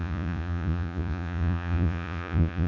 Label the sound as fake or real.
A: fake